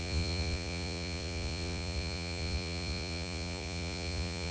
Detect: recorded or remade remade